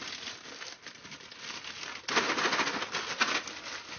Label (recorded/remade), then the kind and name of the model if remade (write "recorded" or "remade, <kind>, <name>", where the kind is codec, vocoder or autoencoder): recorded